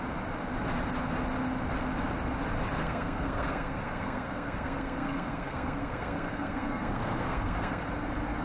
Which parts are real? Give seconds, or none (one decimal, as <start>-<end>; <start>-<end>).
0.0-2.8; 7.8-8.4